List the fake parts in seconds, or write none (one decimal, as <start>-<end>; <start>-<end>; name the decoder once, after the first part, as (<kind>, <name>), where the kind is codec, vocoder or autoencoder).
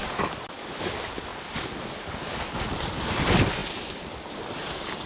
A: none